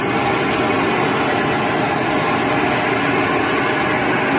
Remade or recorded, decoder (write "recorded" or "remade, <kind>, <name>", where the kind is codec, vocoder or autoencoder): recorded